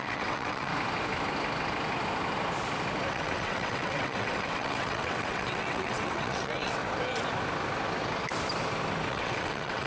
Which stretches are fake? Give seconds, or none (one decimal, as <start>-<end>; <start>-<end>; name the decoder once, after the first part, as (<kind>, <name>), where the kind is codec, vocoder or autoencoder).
0.0-0.7 (vocoder, WaveNeXt); 3.1-6.8; 9.1-9.9